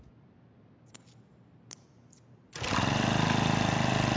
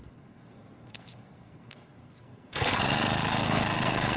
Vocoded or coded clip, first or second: second